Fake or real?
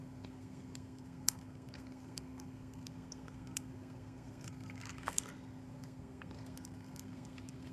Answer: fake